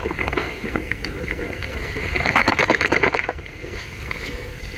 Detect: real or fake fake